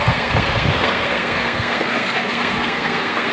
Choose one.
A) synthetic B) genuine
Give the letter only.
A